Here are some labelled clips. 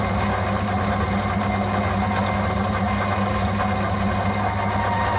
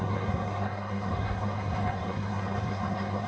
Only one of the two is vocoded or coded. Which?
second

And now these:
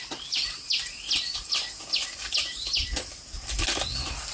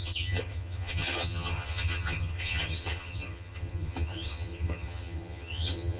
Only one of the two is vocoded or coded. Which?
second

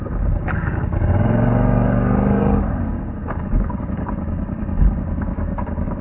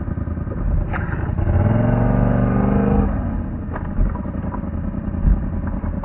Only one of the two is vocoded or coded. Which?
first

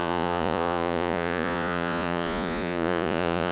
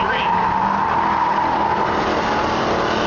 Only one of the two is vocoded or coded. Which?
first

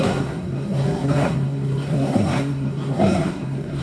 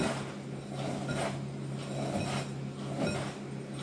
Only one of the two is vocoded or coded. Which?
first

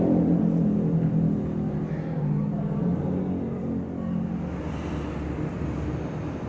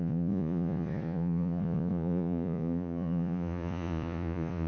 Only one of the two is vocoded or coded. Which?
second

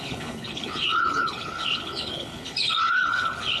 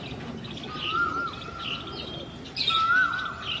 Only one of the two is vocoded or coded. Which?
first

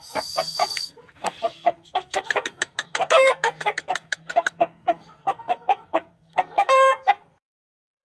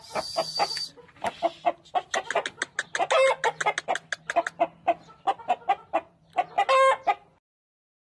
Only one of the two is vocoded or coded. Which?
first